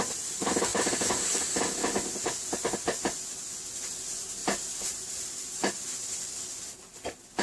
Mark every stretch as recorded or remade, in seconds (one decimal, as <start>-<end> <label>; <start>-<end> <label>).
0.0-0.7 remade; 0.7-1.6 recorded; 1.6-4.4 remade; 4.4-6.0 recorded; 6.0-7.4 remade